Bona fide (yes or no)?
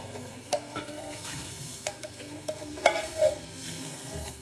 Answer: no